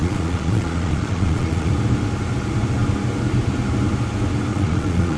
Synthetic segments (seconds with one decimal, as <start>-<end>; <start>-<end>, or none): 0.0-1.7; 4.5-5.2